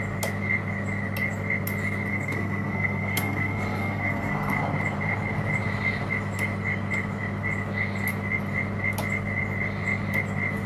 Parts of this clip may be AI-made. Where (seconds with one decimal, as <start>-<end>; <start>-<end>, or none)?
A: 2.1-4.5